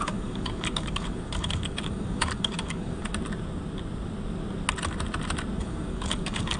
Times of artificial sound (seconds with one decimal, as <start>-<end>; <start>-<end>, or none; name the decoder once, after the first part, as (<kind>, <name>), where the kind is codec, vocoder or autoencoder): 0.0-3.1 (codec, DAC); 5.6-6.6